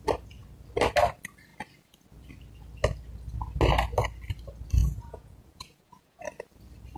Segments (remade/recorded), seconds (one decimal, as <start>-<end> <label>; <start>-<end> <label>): 0.0-4.8 recorded; 4.8-6.2 remade; 6.2-7.0 recorded